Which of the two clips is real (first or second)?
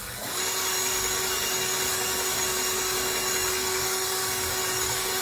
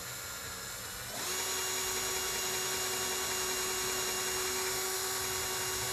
second